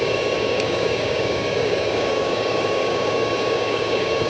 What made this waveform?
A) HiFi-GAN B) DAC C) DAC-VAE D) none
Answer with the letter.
B